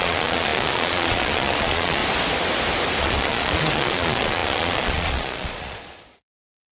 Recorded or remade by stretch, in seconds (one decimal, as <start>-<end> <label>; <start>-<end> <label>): 0.0-2.0 remade; 2.0-3.0 recorded; 3.0-6.7 remade